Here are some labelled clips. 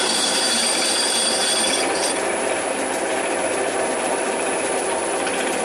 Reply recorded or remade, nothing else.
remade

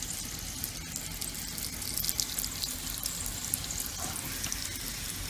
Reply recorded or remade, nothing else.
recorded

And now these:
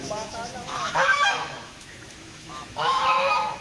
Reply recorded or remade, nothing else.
remade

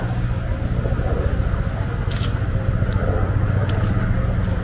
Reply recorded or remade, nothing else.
recorded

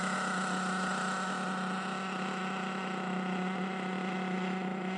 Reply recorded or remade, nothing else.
recorded